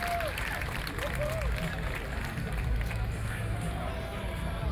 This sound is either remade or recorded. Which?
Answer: recorded